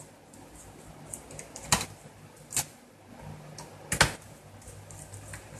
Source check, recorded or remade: recorded